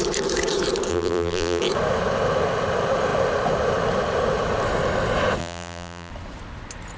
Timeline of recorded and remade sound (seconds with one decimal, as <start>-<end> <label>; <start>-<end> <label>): 0.0-0.9 recorded; 0.9-1.6 remade; 1.6-5.4 recorded; 5.4-6.1 remade; 6.1-7.0 recorded